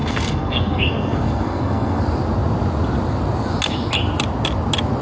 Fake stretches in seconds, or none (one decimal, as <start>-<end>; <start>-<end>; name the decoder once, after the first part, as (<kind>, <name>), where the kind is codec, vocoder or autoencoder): 0.0-2.0 (codec, SNAC)